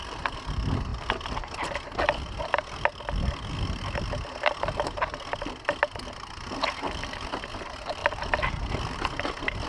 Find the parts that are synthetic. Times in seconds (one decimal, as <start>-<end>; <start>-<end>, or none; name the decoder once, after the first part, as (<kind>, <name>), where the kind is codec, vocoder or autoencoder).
none